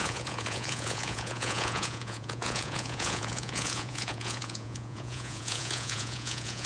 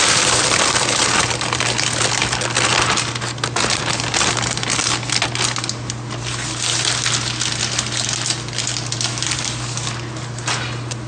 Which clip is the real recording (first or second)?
second